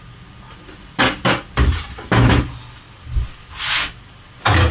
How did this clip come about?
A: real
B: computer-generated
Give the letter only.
A